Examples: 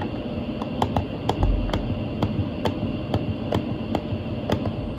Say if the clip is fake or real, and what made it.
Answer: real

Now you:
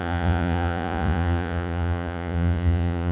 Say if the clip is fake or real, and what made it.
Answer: fake, vocoder, Vocos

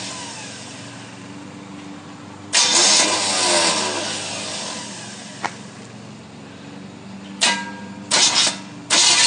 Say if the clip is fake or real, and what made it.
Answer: real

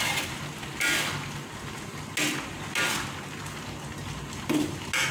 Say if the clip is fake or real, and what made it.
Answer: real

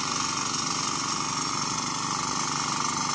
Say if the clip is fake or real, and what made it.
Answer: real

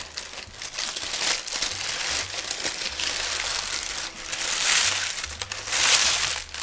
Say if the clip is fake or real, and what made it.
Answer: real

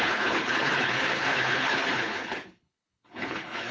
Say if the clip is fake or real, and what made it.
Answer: fake, codec, HILCodec